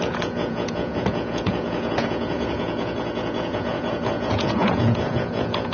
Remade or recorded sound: remade